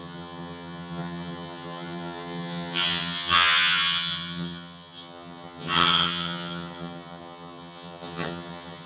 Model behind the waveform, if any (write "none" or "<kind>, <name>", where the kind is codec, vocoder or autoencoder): vocoder, HiFi-GAN